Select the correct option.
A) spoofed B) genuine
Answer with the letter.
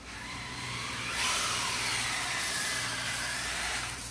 A